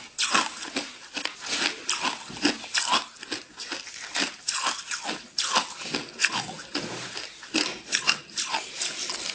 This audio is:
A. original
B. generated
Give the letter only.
A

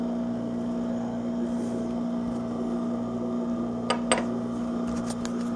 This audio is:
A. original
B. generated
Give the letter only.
A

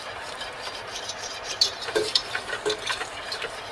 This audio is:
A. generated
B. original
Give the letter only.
A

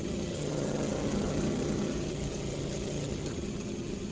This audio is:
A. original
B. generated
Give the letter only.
B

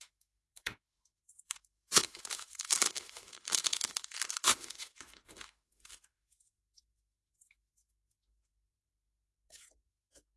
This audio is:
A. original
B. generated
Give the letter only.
B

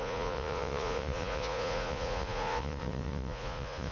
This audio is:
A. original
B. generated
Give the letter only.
B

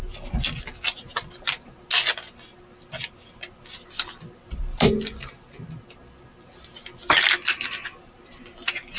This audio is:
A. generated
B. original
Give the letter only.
B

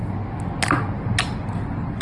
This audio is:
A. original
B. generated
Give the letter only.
A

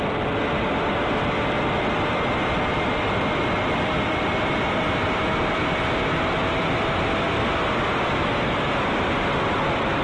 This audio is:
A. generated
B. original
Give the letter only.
A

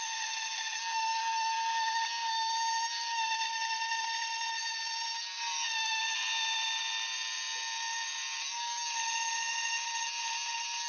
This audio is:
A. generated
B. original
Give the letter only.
B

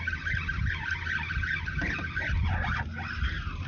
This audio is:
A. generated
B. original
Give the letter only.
B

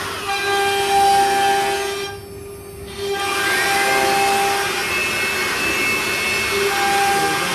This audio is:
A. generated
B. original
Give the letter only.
B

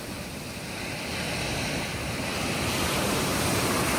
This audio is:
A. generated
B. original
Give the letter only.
B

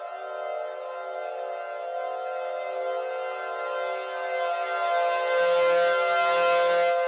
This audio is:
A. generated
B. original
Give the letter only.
B